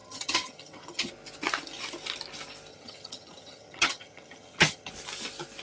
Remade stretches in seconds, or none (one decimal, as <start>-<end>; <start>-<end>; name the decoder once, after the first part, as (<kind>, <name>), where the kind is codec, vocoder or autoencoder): 0.0-1.1 (vocoder, HiFi-GAN); 2.7-4.9